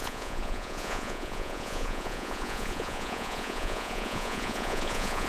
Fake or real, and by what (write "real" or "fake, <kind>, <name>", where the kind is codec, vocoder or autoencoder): fake, vocoder, Vocos